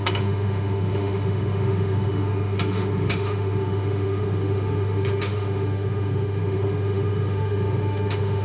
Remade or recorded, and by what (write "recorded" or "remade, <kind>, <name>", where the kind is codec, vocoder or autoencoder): remade, autoencoder, DAC-VAE